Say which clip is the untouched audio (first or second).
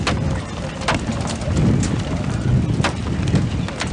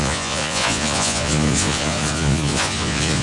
first